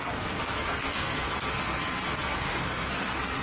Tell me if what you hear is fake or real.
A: fake